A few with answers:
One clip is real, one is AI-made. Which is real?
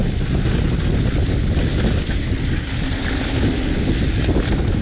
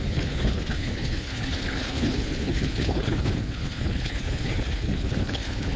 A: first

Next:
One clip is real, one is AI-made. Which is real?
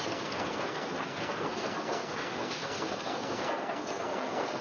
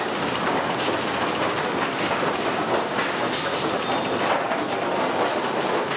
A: second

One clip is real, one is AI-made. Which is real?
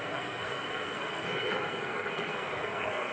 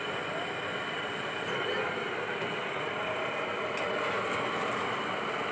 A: second